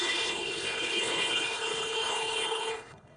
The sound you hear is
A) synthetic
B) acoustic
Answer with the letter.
A